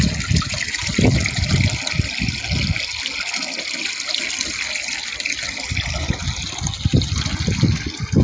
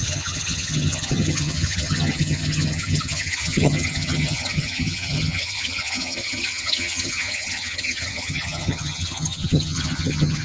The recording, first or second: first